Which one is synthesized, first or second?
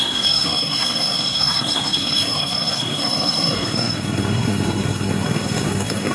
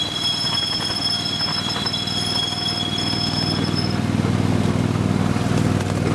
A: first